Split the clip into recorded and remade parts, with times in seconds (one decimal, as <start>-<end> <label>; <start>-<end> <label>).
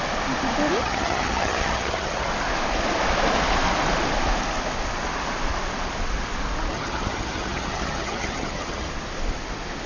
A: 0.0-0.8 recorded; 0.8-2.3 remade; 2.3-6.7 recorded; 6.7-8.9 remade; 8.9-9.9 recorded